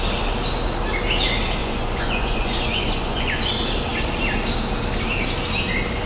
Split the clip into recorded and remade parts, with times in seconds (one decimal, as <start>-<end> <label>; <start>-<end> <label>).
0.0-1.6 recorded; 1.6-3.4 remade; 3.4-6.1 recorded